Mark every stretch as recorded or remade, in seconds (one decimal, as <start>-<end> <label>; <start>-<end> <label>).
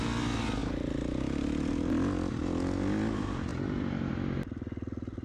0.0-5.2 recorded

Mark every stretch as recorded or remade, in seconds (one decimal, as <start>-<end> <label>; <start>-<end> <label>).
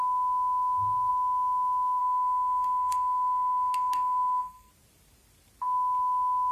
0.0-2.0 recorded; 2.0-4.7 remade; 4.7-6.5 recorded